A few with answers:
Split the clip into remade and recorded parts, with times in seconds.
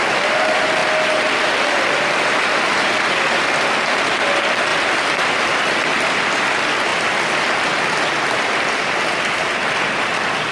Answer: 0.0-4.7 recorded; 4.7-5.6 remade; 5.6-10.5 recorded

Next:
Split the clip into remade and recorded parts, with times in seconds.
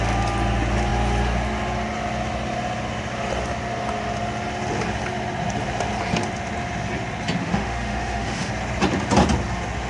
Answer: 0.0-7.4 recorded; 7.4-8.5 remade; 8.5-9.9 recorded